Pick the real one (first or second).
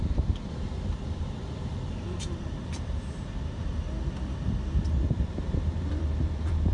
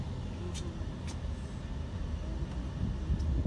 second